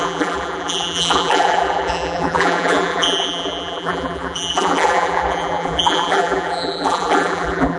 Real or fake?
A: fake